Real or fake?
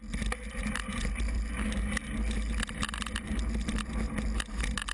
real